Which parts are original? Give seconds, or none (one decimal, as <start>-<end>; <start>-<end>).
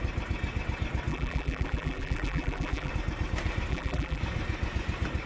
0.0-1.1; 2.9-3.7; 4.2-5.3